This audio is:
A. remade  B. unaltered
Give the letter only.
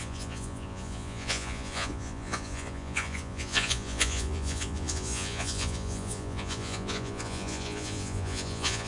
A